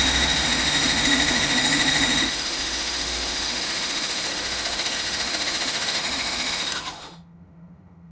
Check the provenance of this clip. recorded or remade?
remade